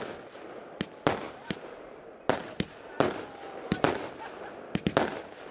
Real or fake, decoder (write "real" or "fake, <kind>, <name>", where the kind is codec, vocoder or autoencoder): real